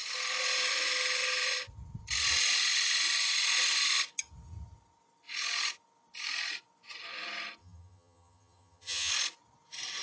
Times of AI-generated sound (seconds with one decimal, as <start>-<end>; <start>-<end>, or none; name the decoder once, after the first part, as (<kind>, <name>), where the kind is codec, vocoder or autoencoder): 7.6-9.1 (vocoder, HiFi-GAN)